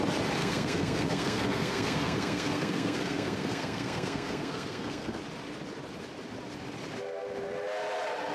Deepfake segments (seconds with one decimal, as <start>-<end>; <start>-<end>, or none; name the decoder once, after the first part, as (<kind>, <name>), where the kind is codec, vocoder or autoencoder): 0.4-5.2 (codec, SNAC)